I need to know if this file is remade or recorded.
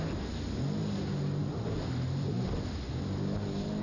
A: recorded